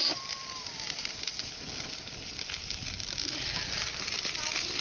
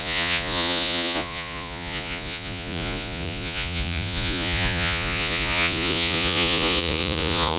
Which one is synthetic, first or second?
second